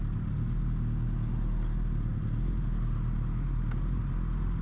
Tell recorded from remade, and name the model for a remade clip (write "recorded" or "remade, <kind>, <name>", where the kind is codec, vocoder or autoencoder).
recorded